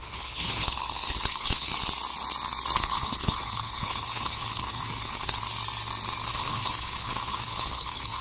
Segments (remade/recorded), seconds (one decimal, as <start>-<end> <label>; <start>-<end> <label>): 0.0-1.7 remade; 1.7-2.8 recorded; 2.8-5.4 remade; 5.4-6.3 recorded; 6.3-8.2 remade